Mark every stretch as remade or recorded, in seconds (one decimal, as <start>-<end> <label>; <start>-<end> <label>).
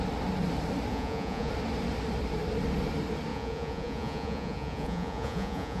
0.0-0.9 recorded; 0.9-1.5 remade; 1.5-3.3 recorded; 3.3-5.8 remade